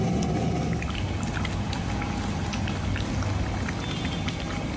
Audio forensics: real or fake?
real